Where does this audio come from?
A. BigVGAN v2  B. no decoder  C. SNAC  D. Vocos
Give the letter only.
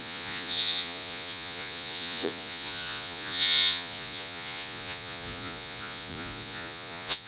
D